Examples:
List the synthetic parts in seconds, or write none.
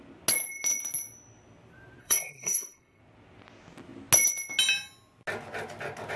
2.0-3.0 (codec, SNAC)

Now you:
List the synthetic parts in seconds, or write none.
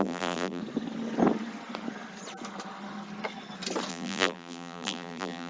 0.0-0.6 (vocoder, BigVGAN v2); 3.9-5.5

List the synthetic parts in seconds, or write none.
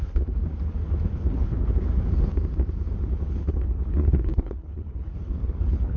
0.0-0.4 (codec, HILCodec); 1.1-1.9; 3.3-6.0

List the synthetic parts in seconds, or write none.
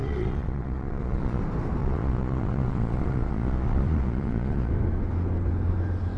0.0-1.4 (vocoder, Vocos); 1.8-4.7